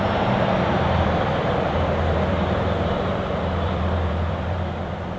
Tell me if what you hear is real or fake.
fake